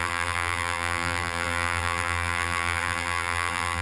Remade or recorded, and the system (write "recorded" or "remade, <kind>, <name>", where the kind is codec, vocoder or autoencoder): remade, vocoder, BigVGAN v2